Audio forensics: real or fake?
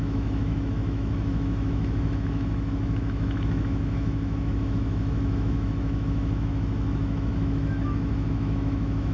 fake